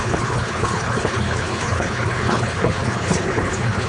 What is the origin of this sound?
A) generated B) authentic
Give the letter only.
A